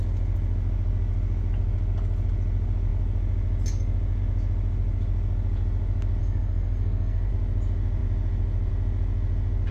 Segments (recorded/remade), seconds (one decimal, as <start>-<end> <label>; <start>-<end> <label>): 0.0-6.2 recorded; 6.2-7.3 remade; 7.3-9.7 recorded